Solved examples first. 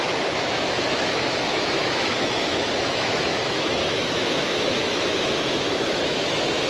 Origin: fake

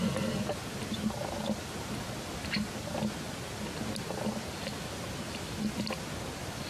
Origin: real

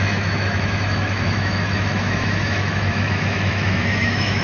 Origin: fake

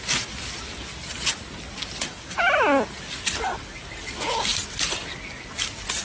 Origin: real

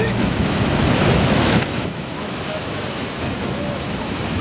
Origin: fake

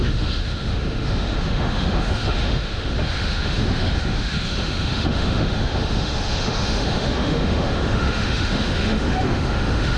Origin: fake